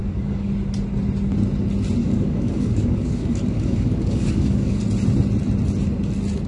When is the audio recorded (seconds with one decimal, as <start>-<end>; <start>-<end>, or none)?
0.5-2.0; 4.8-6.5